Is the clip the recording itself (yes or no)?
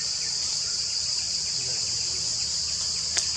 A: yes